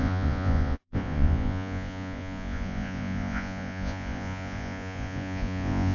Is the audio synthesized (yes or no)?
yes